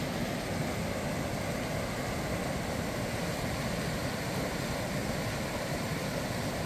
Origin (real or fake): real